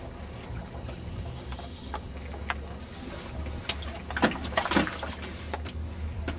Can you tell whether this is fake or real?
real